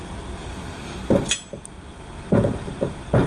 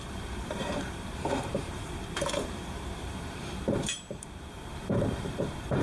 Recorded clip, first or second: first